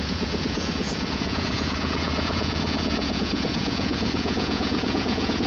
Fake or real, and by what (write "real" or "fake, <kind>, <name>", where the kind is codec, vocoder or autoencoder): fake, vocoder, Vocos